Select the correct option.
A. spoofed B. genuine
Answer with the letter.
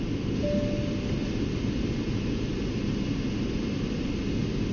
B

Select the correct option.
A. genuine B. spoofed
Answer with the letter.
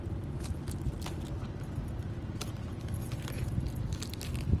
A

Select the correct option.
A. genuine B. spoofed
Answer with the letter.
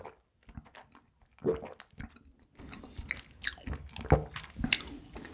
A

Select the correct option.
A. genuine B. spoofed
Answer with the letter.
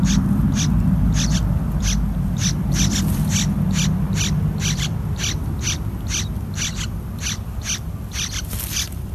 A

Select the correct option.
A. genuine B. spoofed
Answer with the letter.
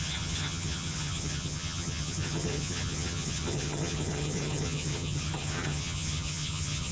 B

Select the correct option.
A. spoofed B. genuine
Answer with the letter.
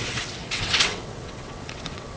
A